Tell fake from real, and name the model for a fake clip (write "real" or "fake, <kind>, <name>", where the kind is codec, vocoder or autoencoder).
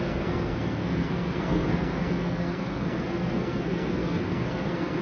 fake, codec, SNAC